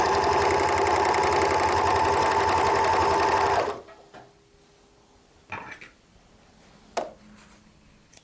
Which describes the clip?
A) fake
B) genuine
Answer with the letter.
B